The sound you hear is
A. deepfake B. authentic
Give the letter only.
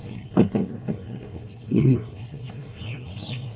A